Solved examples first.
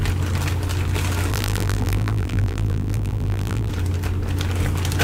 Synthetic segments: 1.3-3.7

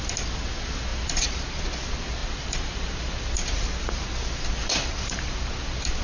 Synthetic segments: 0.9-1.6; 2.2-2.8; 4.6-5.6

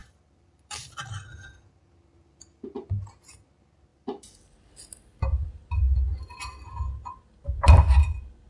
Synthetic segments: 0.0-1.1; 3.9-4.6

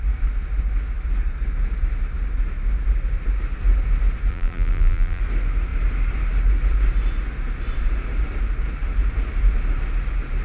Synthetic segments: 4.3-5.2

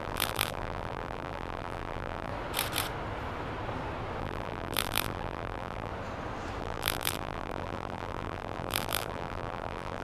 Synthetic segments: 0.0-2.3; 4.2-5.9; 6.6-10.0

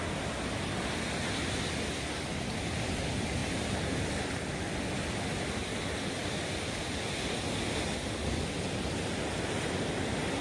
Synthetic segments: none

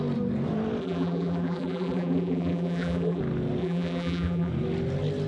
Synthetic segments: 0.8-3.2; 3.6-4.5

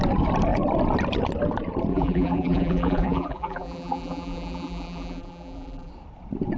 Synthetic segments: 1.9-5.9